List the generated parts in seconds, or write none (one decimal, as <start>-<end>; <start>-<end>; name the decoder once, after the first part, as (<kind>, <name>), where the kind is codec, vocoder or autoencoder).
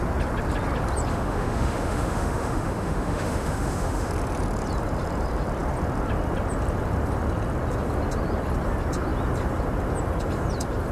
1.1-4.1 (autoencoder, DAC-VAE)